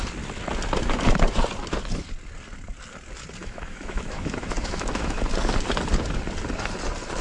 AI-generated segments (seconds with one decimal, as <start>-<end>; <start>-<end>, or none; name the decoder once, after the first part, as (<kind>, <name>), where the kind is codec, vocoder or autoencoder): 3.4-5.2 (autoencoder, DAC-VAE)